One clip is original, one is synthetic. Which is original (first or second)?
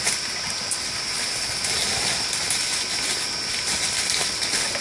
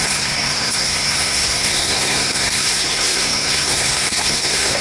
first